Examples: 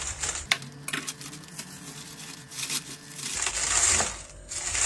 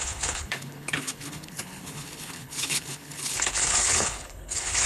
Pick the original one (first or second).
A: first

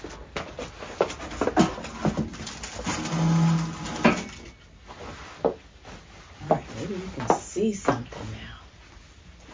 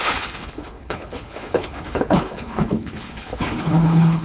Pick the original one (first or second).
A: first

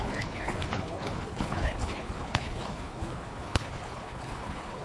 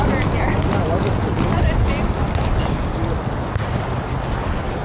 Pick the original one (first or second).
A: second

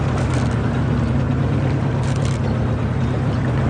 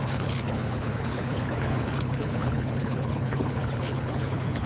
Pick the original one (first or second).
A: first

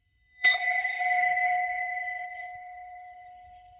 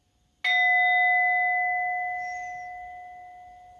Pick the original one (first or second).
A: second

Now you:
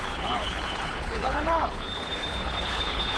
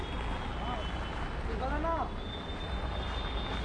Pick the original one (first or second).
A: second